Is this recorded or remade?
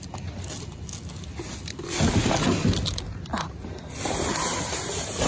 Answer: recorded